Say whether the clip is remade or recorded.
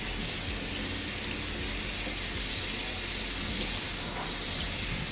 recorded